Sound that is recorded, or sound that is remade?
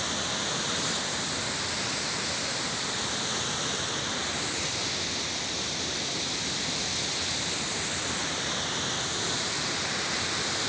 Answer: recorded